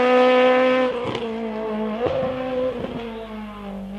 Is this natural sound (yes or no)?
yes